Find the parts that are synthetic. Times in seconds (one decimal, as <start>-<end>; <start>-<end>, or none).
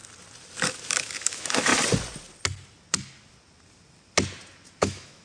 1.0-1.7; 4.8-5.2